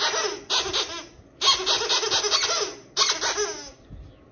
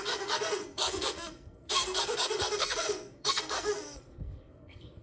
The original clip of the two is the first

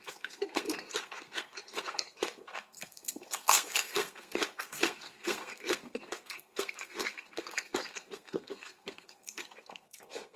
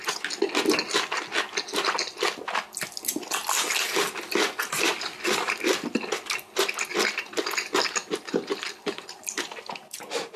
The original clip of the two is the second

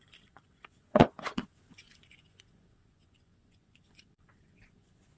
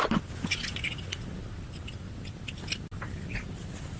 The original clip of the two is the second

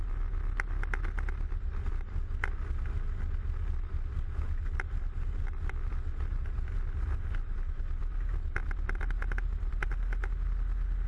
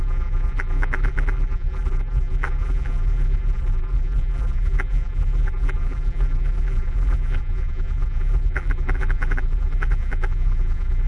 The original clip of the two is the first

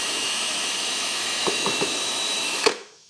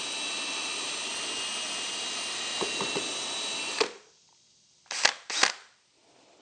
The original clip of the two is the second